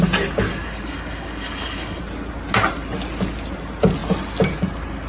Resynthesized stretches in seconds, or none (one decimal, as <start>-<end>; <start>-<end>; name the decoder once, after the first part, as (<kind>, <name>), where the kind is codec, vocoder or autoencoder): 0.5-2.0 (codec, DAC)